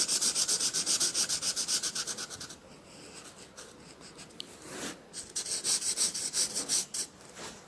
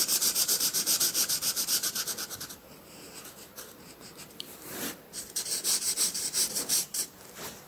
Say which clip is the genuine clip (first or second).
first